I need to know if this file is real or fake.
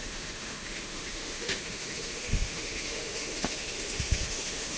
fake